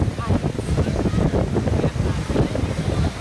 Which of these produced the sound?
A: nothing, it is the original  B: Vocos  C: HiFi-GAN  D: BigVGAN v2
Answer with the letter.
A